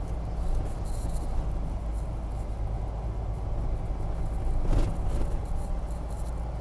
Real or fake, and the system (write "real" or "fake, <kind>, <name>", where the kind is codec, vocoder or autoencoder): real